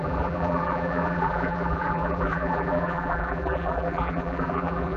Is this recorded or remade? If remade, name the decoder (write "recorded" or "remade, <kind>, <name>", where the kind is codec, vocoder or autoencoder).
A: remade, vocoder, BigVGAN v2